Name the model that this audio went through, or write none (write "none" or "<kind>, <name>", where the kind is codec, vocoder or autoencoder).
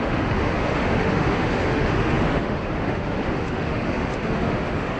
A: autoencoder, DAC-VAE